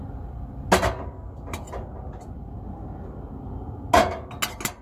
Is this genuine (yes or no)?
yes